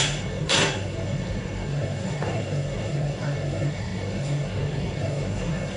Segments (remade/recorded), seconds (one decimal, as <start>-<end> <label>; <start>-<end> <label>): 0.0-5.8 remade